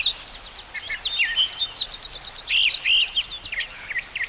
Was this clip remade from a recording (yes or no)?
no